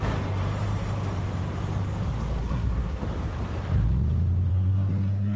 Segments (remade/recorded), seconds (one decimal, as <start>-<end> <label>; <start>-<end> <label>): 0.0-2.4 recorded; 2.4-3.0 remade; 3.0-4.5 recorded; 4.5-5.4 remade